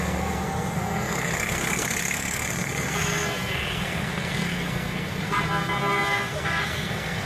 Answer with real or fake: fake